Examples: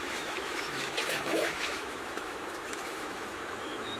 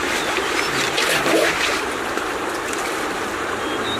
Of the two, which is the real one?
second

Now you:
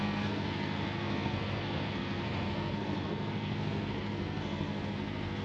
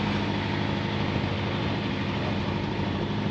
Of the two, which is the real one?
second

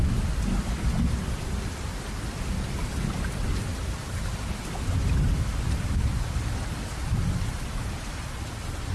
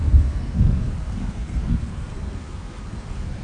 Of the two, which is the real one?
first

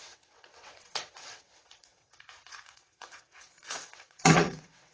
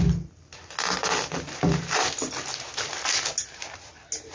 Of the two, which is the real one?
second